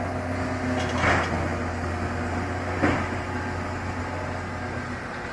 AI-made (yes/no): no